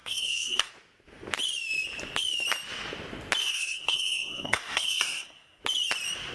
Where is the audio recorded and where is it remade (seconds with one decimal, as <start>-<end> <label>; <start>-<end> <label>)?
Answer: 0.0-0.7 remade; 0.7-3.4 recorded; 3.4-5.6 remade; 5.6-6.3 recorded